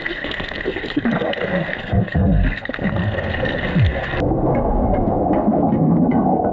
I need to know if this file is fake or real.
fake